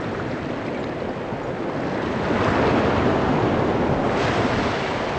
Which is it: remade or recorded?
recorded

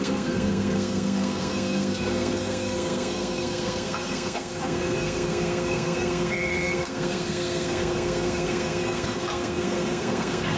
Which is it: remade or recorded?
remade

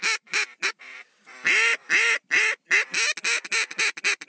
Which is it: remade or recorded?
recorded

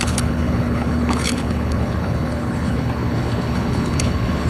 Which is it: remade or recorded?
remade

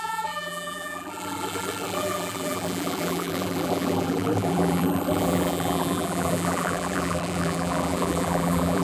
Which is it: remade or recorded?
remade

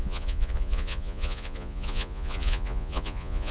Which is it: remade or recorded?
remade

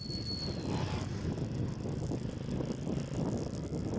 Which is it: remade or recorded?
recorded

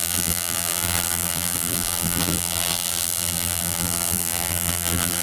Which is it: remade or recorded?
remade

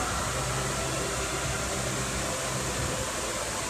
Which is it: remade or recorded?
recorded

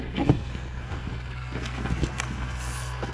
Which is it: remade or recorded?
remade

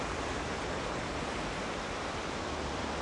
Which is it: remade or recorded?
remade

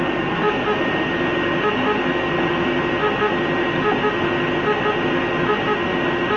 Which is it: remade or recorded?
recorded